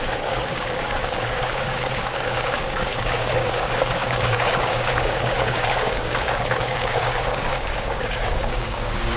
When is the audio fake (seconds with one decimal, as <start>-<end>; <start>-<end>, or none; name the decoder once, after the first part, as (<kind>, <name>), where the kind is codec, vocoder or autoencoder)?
0.0-9.2 (codec, DAC)